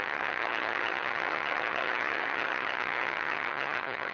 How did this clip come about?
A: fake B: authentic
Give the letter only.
A